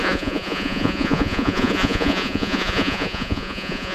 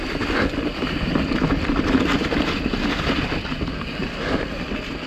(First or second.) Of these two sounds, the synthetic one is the first